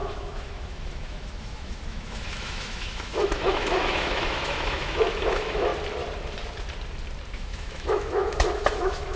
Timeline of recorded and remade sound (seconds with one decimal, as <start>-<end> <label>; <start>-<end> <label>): 0.0-5.7 remade; 5.7-7.3 recorded; 7.3-9.2 remade